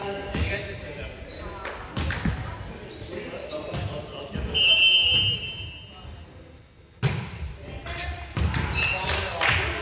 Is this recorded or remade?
recorded